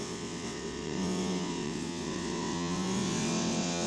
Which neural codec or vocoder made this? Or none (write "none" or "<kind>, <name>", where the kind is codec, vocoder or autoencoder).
vocoder, WaveNeXt